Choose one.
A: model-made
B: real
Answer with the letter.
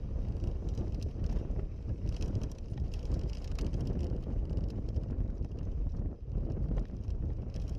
A